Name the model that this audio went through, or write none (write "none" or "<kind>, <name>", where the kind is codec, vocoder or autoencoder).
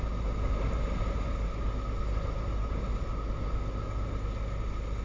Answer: none